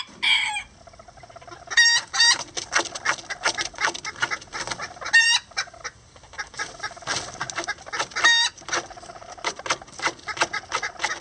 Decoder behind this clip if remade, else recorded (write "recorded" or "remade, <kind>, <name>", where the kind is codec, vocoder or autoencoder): recorded